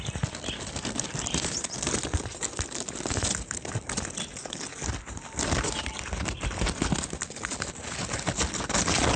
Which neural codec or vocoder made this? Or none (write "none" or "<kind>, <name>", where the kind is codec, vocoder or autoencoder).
none